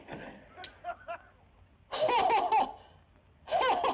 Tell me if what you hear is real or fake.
real